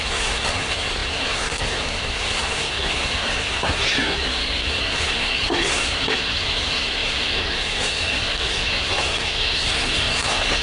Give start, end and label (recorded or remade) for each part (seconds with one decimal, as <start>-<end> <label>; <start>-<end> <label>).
0.0-10.6 remade